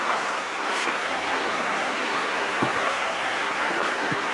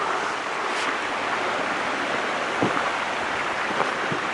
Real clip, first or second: second